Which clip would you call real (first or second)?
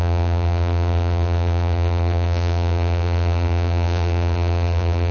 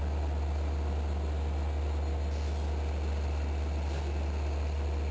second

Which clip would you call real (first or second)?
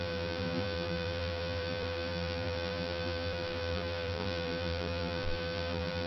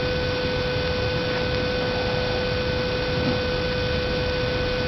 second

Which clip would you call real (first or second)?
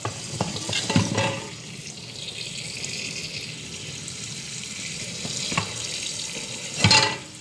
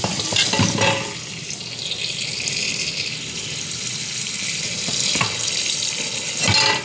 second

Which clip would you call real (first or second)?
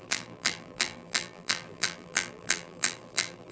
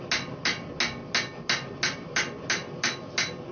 second